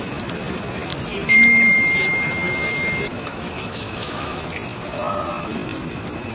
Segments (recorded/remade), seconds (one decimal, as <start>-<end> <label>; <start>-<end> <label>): 0.0-3.3 recorded; 3.3-4.4 remade; 4.4-6.3 recorded

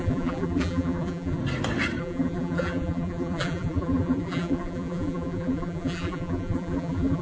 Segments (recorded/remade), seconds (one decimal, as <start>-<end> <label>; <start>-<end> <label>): 0.0-1.4 remade; 1.4-2.0 recorded; 2.0-7.2 remade

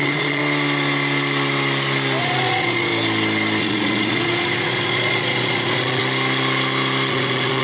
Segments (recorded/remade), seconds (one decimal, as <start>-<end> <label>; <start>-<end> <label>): 0.0-0.4 remade; 0.4-2.2 recorded; 2.2-2.9 remade; 2.9-3.6 recorded; 3.6-6.0 remade; 6.0-7.1 recorded; 7.1-7.6 remade

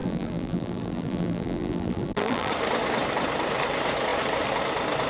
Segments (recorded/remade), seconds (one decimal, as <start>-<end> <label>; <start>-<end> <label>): 0.0-2.5 remade; 2.5-5.1 recorded

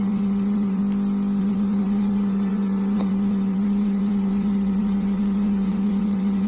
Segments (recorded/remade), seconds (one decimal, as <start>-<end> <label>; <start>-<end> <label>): 0.0-0.8 remade; 0.8-1.4 recorded; 1.4-6.5 remade

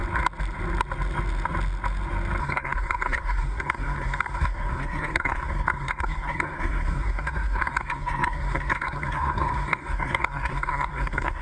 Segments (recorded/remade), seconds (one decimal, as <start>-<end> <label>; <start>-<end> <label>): 0.0-2.4 recorded; 2.4-11.4 remade

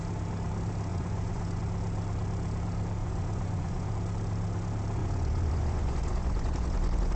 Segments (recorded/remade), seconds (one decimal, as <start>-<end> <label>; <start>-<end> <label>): 0.0-0.9 recorded; 0.9-1.6 remade; 1.6-3.0 recorded; 3.0-3.9 remade; 3.9-5.0 recorded; 5.0-7.2 remade